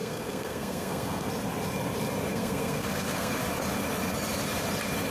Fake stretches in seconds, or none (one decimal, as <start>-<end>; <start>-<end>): 0.0-1.3; 2.3-3.3